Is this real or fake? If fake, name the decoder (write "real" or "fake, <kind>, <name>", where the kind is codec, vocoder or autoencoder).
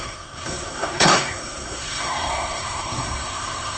fake, codec, SNAC